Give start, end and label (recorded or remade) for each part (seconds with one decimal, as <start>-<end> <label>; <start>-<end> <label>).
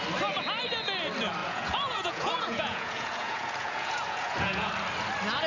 0.0-1.4 recorded; 1.4-4.7 remade; 4.7-5.5 recorded